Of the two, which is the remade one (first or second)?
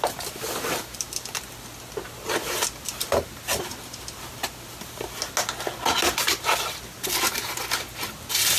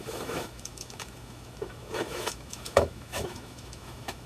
second